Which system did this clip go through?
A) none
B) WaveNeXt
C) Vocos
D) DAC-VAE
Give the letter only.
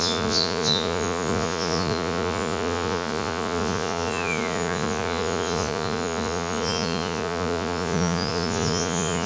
C